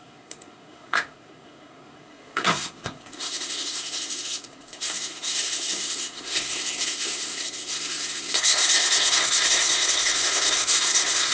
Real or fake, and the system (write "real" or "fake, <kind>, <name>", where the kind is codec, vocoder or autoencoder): fake, codec, SNAC